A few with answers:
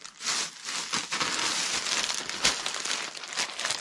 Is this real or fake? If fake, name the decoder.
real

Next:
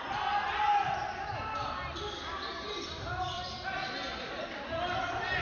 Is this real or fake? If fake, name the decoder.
real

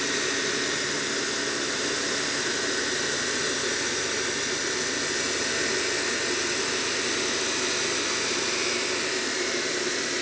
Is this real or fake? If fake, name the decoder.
real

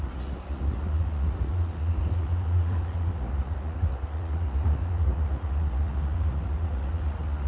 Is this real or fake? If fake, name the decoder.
fake, vocoder, Vocos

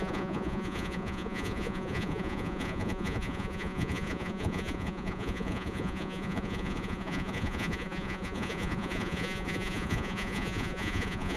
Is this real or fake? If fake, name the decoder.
fake, vocoder, Vocos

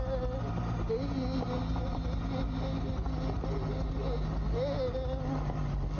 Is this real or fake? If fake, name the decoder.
real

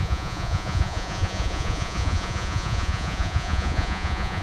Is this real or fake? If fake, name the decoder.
fake, vocoder, Vocos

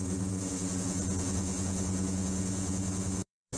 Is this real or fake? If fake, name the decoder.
fake, vocoder, Vocos